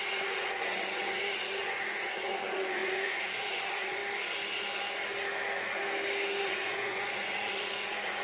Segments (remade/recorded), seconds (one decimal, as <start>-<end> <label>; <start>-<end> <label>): 0.0-4.0 remade; 4.0-6.4 recorded; 6.4-8.2 remade